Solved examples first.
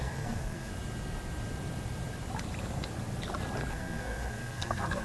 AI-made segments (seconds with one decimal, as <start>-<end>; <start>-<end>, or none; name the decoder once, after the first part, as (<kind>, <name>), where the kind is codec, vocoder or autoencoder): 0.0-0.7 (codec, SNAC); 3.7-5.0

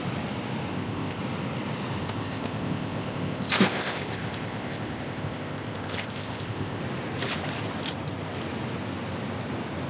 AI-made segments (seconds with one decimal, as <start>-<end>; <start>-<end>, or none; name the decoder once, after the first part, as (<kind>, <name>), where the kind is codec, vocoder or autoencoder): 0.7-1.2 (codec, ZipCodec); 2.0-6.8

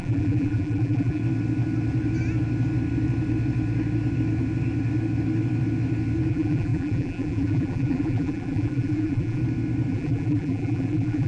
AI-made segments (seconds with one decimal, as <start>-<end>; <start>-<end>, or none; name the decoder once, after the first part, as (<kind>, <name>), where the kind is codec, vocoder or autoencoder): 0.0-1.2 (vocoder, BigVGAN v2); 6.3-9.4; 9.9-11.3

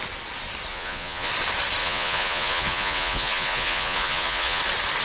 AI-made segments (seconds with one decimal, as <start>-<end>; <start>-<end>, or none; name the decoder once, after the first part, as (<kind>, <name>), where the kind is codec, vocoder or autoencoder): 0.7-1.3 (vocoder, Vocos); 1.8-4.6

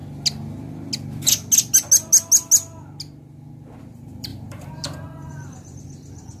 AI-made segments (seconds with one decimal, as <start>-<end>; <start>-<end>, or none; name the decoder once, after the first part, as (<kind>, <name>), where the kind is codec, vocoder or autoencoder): 3.8-6.4 (vocoder, BigVGAN v2)

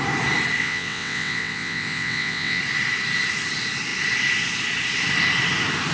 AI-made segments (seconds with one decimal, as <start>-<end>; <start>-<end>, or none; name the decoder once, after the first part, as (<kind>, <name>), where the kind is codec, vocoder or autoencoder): 0.6-2.6 (vocoder, WaveNeXt)

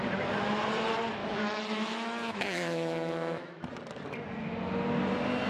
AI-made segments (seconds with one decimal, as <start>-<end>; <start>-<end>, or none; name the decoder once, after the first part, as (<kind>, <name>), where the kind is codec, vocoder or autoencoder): 1.2-3.7 (autoencoder, DAC-VAE)